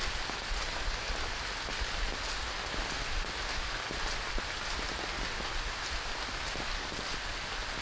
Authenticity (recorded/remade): recorded